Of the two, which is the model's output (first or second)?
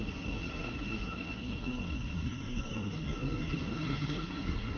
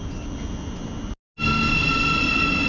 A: first